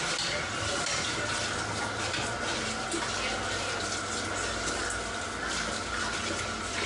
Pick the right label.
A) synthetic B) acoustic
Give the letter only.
B